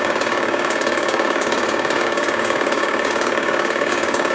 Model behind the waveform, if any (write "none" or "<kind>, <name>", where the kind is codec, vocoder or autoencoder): codec, DAC